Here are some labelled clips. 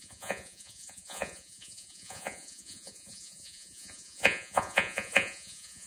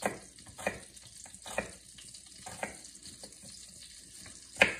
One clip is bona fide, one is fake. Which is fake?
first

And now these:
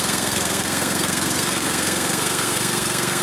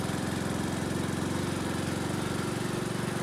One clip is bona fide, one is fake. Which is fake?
first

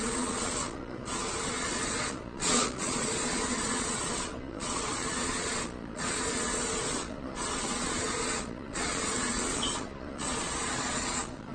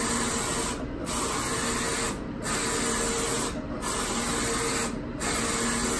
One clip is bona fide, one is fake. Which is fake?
first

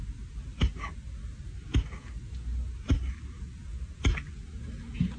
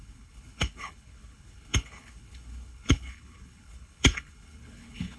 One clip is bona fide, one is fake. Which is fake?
second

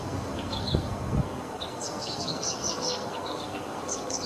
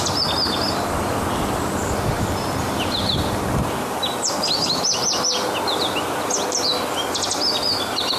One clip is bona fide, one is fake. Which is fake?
first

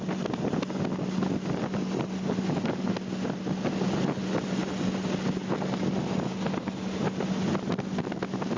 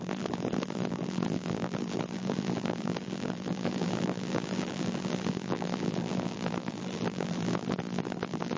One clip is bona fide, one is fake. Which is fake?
second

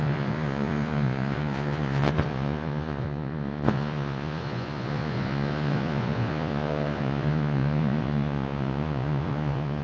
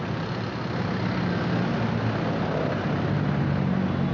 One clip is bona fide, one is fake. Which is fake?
first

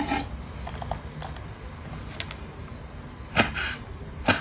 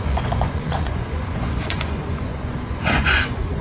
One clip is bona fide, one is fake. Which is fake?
second